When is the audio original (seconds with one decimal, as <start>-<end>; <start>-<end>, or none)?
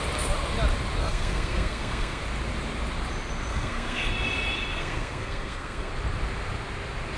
0.0-1.0; 2.2-3.5; 4.1-4.7; 5.9-7.2